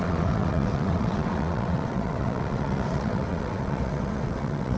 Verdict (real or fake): fake